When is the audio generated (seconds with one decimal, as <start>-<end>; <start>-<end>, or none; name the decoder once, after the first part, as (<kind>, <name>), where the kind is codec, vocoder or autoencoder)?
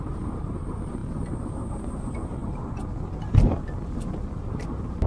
0.0-2.4 (vocoder, BigVGAN v2); 3.2-5.1